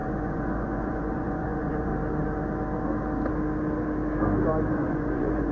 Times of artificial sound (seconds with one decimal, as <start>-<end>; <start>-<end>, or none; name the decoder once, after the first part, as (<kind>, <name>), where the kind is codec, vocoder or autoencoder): 0.0-1.9 (vocoder, Vocos); 4.7-5.5